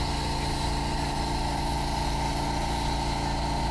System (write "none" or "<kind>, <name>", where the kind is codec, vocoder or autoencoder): none